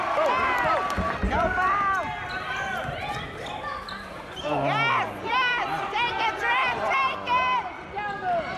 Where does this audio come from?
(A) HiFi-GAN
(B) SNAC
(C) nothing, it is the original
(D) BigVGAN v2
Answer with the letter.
C